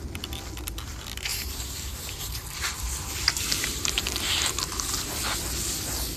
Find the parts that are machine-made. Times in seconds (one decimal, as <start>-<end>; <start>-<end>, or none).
1.3-5.0